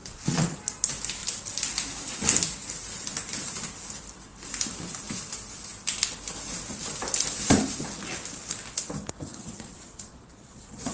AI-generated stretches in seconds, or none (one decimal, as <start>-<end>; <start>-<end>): 0.0-0.6; 9.3-10.9